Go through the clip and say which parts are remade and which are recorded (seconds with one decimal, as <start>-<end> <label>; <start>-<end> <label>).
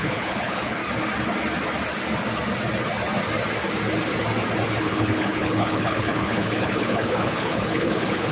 0.0-0.8 remade; 0.8-4.8 recorded; 4.8-8.3 remade